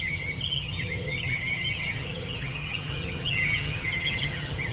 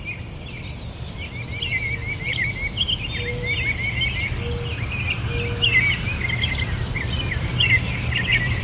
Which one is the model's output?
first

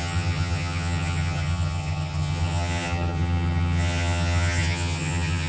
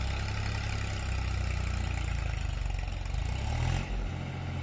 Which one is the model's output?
first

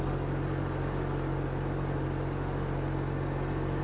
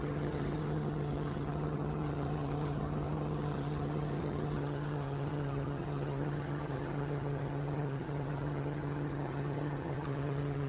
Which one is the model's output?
second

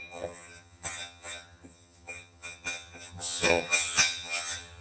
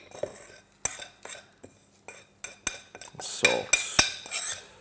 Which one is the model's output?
first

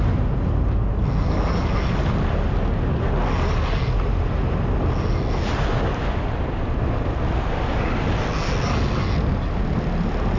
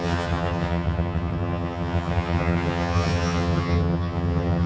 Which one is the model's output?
second